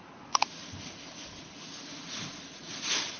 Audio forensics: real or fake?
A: fake